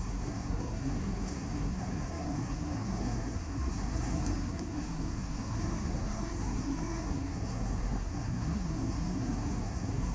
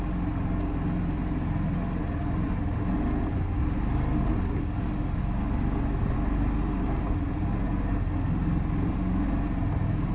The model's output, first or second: first